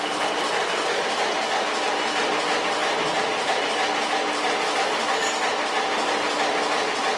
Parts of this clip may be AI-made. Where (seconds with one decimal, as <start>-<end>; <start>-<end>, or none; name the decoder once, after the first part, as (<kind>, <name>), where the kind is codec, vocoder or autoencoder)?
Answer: none